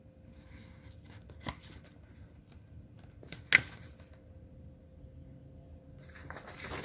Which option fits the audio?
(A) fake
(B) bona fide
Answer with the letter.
B